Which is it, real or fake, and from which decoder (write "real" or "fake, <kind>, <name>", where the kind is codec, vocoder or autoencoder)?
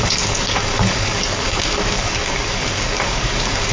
fake, codec, DAC